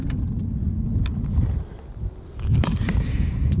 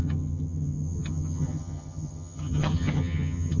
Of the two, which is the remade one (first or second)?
second